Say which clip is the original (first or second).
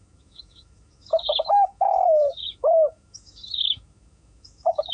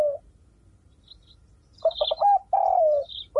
second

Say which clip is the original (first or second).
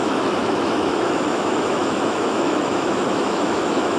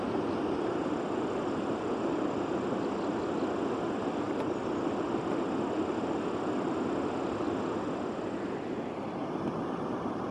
second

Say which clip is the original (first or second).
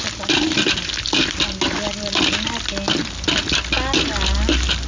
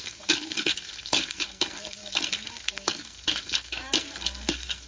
first